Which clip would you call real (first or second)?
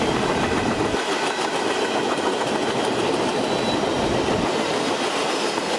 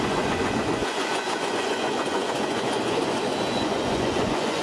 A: first